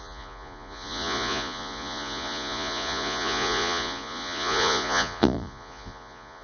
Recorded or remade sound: remade